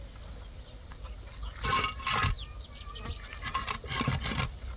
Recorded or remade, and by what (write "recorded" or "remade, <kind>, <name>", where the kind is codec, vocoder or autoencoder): recorded